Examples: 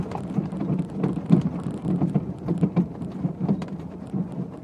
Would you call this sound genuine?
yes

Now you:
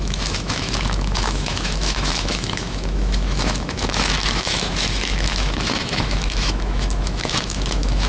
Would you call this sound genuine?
no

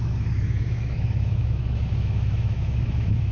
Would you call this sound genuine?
no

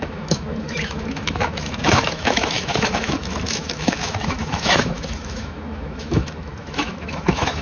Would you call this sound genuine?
no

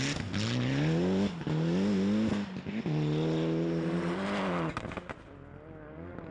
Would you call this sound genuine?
yes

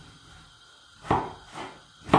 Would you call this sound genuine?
yes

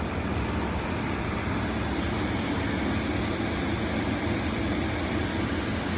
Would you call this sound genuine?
yes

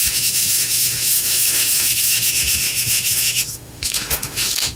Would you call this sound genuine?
no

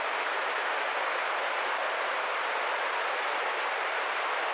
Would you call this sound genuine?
yes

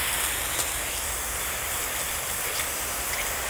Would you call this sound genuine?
yes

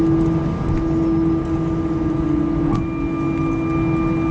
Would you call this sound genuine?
yes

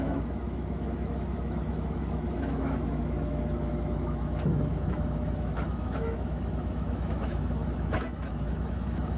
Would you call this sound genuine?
no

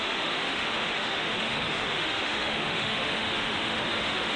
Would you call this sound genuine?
no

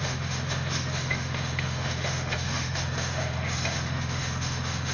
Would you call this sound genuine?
no